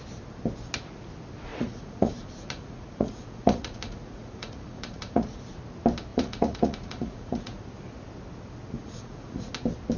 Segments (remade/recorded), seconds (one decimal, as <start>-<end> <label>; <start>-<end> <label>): 0.0-1.5 recorded; 1.5-5.5 remade; 5.5-6.1 recorded; 6.1-7.6 remade; 7.6-8.8 recorded; 8.8-9.5 remade; 9.5-10.0 recorded